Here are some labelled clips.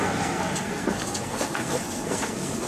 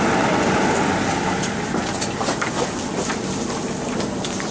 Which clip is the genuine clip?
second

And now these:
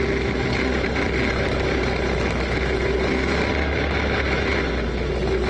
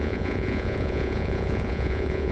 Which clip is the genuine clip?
first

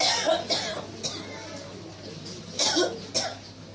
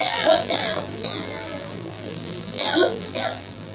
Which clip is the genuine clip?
first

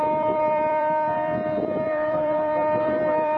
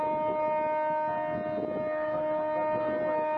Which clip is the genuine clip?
second